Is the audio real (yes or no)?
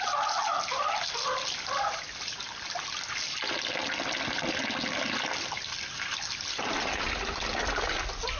yes